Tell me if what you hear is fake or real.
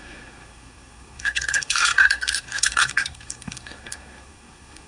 fake